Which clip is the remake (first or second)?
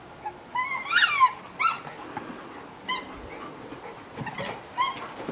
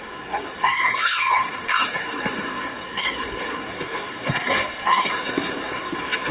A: second